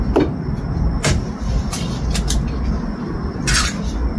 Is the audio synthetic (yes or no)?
no